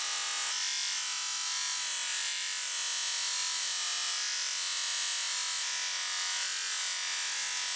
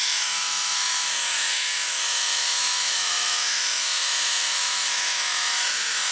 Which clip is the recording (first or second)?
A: first